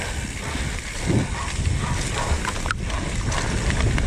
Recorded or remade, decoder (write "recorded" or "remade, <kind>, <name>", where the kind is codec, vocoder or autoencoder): recorded